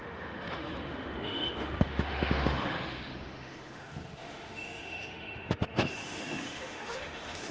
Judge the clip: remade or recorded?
remade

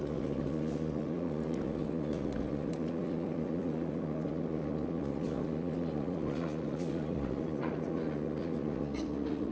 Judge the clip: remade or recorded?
remade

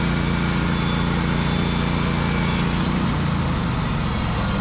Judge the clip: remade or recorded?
recorded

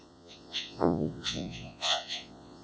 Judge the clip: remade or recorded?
remade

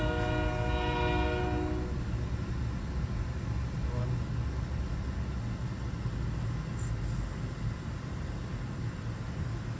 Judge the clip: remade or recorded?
recorded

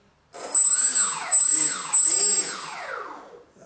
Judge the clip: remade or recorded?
recorded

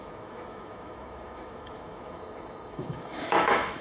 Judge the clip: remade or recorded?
remade